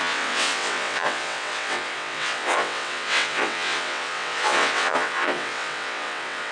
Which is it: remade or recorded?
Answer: remade